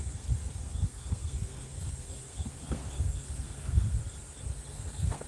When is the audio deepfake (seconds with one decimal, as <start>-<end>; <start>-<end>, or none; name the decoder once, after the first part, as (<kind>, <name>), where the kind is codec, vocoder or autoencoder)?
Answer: 0.0-4.0 (codec, SNAC); 4.7-5.3